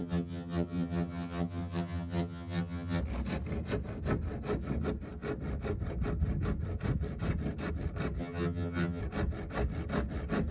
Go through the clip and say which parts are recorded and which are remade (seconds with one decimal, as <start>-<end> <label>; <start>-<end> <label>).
0.0-3.0 remade; 3.0-8.2 recorded; 8.2-9.0 remade; 9.0-10.5 recorded